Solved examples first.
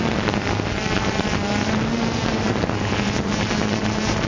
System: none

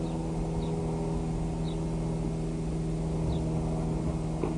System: none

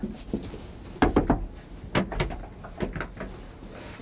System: none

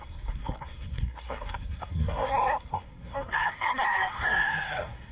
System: codec, SNAC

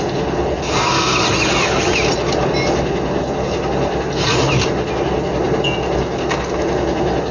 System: none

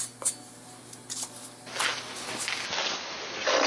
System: none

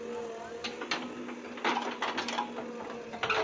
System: none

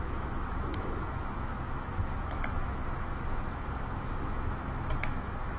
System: autoencoder, DAC-VAE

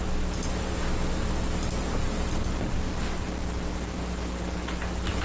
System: none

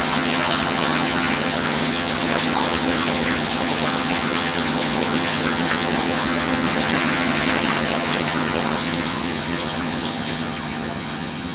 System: vocoder, HiFi-GAN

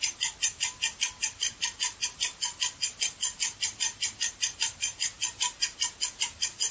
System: none